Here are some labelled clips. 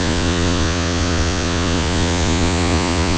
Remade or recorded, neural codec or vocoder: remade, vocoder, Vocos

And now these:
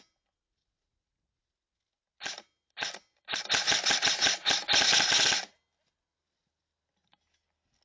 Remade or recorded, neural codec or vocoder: recorded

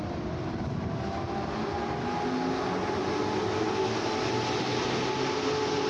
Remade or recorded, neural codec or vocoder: recorded